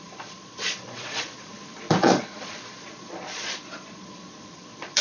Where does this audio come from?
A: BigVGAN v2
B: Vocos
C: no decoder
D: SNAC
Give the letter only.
B